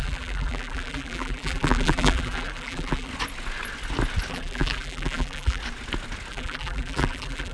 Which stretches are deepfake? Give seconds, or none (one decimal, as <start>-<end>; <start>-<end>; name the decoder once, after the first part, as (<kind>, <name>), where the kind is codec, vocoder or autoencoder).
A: 0.0-3.1 (vocoder, BigVGAN v2); 4.3-5.6; 6.3-7.5